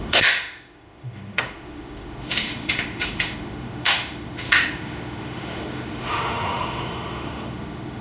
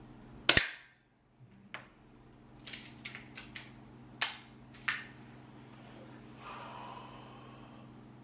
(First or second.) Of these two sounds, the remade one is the first